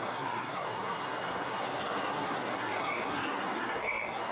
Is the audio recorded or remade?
remade